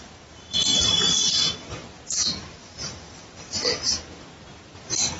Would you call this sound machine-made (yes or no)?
no